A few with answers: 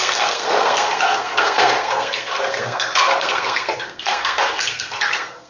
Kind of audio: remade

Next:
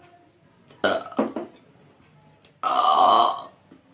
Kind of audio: recorded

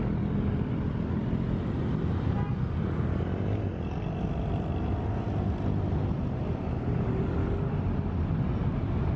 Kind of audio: recorded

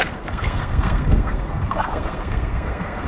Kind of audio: remade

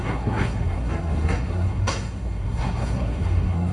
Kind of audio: remade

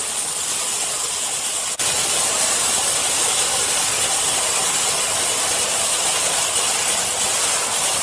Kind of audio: recorded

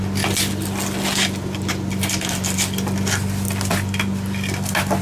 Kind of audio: recorded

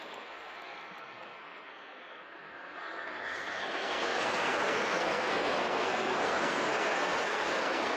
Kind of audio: remade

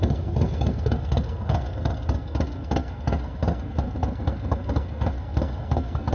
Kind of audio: remade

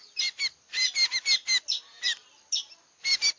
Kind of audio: recorded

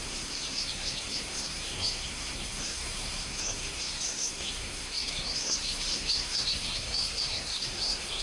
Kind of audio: remade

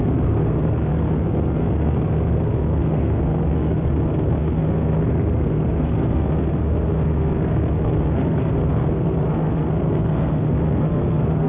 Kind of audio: remade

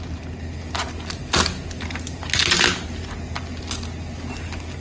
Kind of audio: recorded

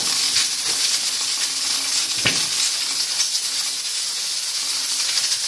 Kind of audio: recorded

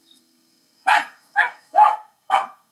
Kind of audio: remade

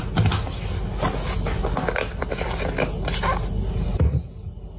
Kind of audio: recorded